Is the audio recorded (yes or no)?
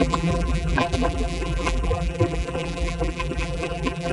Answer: no